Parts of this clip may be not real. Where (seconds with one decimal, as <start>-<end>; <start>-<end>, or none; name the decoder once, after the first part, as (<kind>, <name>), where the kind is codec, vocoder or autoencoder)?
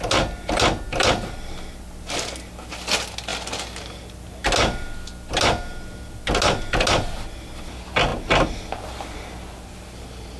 none